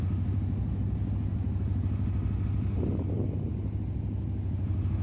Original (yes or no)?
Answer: yes